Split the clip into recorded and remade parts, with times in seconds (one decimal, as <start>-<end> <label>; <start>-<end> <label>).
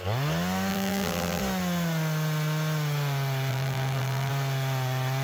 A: 0.0-0.7 recorded; 0.7-1.4 remade; 1.4-3.5 recorded; 3.5-4.3 remade; 4.3-5.2 recorded